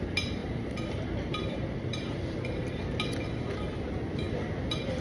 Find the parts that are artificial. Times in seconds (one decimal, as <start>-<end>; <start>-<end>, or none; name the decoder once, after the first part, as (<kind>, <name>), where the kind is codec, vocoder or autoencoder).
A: 0.4-2.8 (vocoder, BigVGAN v2)